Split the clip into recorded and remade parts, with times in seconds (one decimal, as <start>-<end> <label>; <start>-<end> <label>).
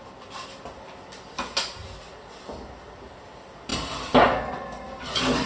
0.0-5.5 recorded